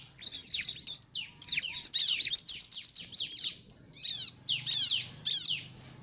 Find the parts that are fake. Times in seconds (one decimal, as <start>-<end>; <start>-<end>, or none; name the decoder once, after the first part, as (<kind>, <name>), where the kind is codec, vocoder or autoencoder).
none